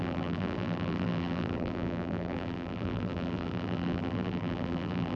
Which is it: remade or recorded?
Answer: remade